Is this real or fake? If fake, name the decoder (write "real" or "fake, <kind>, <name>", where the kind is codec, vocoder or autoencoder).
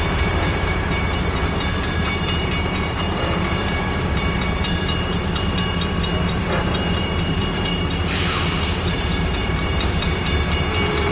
fake, vocoder, BigVGAN v2